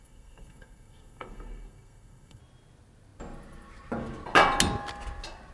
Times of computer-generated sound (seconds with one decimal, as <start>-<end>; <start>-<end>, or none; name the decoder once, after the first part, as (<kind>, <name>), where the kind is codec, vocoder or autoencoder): 0.0-2.4 (codec, SNAC)